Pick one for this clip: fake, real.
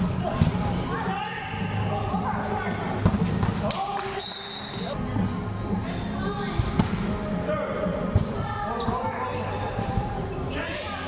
real